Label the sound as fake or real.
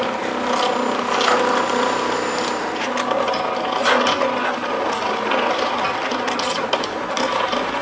real